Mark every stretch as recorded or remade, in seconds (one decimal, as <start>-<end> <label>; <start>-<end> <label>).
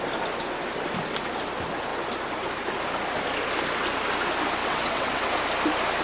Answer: 0.0-4.6 recorded; 4.6-5.3 remade; 5.3-6.0 recorded